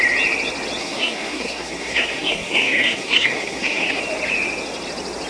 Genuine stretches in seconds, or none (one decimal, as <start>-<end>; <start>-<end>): 0.0-0.8; 4.0-5.3